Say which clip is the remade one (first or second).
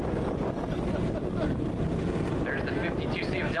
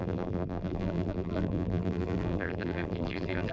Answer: second